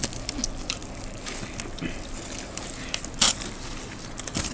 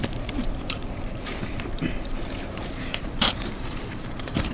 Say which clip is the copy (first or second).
second